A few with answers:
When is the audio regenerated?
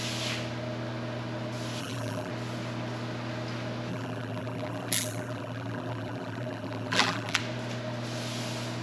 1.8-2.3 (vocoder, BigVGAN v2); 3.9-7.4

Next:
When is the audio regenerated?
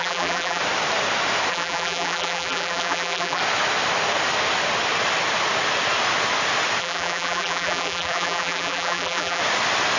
0.0-0.6 (vocoder, BigVGAN v2); 1.5-3.4; 6.8-9.4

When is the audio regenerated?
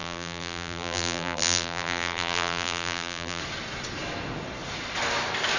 0.0-3.4 (vocoder, BigVGAN v2)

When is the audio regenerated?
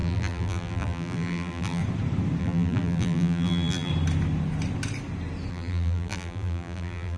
0.0-1.8 (vocoder, BigVGAN v2); 2.4-3.9; 5.5-7.2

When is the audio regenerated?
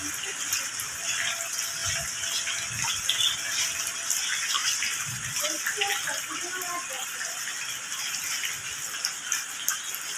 4.6-8.8 (vocoder, BigVGAN v2)